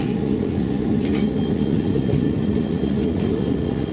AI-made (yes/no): yes